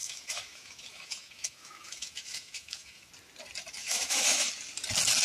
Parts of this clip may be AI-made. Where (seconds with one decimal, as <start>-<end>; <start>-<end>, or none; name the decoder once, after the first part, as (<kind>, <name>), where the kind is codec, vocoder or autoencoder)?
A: 0.0-3.1 (autoencoder, DAC-VAE); 3.8-4.5